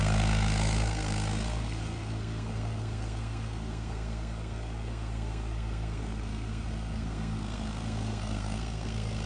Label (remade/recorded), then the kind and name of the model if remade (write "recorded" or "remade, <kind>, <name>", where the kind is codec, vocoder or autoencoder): remade, codec, SNAC